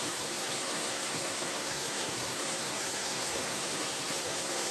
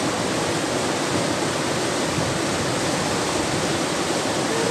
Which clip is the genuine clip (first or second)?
second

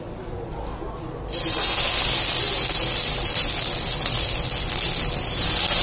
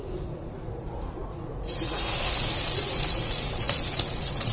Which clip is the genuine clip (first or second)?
first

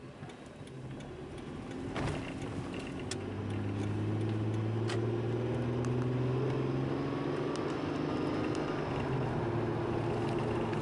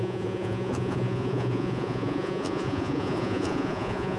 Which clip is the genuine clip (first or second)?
first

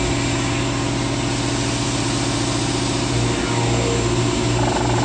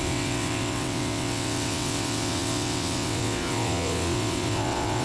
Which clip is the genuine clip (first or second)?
first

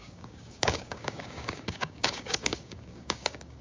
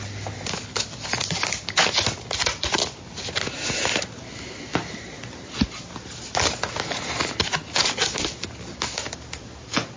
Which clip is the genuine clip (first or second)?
second